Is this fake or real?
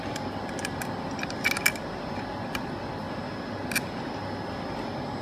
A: real